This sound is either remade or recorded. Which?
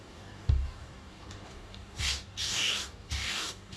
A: remade